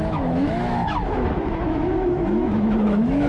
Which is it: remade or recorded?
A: remade